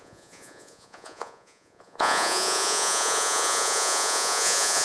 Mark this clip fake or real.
fake